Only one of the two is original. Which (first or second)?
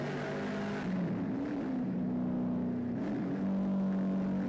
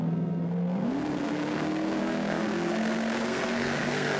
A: first